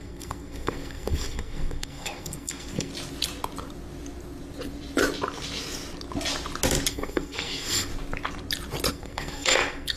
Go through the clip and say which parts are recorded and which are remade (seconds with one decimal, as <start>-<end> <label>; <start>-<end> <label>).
0.0-2.9 remade; 2.9-6.9 recorded; 6.9-7.9 remade; 7.9-8.9 recorded; 8.9-10.0 remade